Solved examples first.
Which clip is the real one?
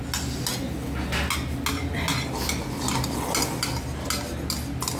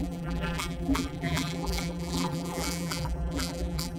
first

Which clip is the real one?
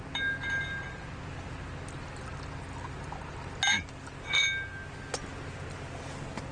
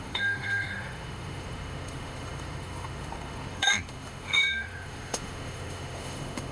first